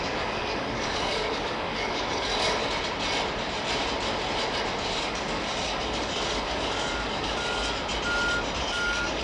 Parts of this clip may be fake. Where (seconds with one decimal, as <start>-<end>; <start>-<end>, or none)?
0.0-2.3; 4.8-7.9; 8.6-9.2